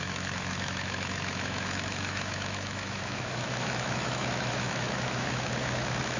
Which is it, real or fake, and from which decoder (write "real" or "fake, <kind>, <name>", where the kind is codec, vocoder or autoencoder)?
fake, autoencoder, DAC-VAE